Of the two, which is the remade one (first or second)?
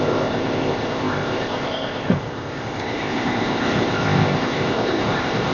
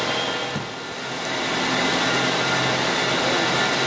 first